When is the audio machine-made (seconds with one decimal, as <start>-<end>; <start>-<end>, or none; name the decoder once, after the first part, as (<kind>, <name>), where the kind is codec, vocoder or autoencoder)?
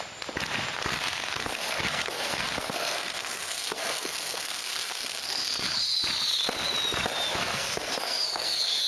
0.9-5.8 (codec, SNAC); 7.4-8.9